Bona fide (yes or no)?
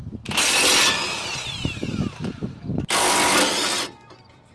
yes